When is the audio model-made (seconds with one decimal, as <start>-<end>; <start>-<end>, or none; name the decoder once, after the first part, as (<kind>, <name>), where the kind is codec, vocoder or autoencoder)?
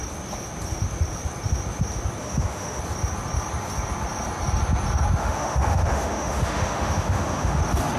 2.2-2.8 (autoencoder, DAC-VAE); 5.2-7.6